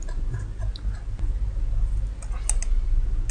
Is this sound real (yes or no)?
yes